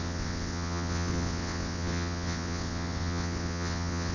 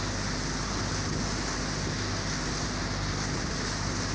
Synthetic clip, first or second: first